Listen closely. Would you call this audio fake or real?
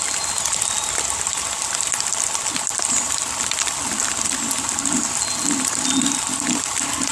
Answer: real